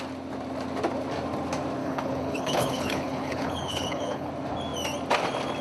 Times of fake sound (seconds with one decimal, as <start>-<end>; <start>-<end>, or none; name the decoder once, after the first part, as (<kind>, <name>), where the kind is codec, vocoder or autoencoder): 1.8-4.3 (codec, HILCodec)